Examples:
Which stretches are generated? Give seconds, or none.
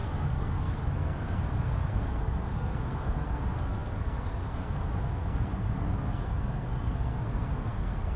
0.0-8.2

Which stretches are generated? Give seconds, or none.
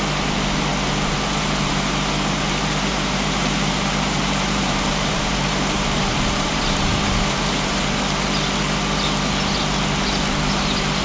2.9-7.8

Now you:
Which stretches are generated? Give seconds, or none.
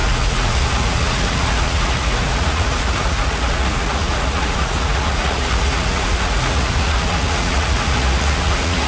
0.0-8.9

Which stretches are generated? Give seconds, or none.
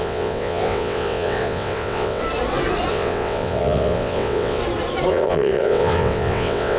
0.0-2.2; 2.9-4.6; 5.1-6.8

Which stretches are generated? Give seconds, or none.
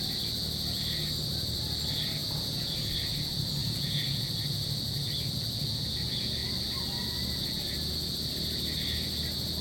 2.2-2.9; 3.6-4.2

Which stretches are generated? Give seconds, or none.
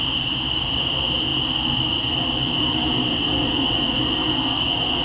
none